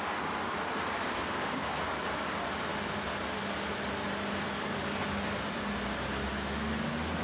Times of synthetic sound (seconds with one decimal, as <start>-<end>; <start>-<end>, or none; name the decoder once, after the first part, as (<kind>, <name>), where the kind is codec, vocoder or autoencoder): 1.1-1.9 (codec, DAC)